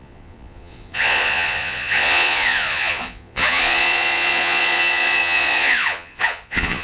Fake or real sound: fake